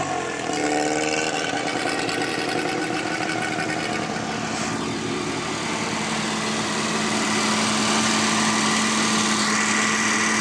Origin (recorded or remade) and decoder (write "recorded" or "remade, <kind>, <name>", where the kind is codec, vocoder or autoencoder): recorded